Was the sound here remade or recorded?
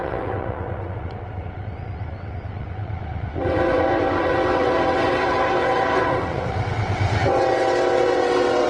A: remade